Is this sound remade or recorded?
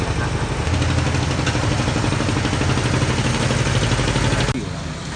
recorded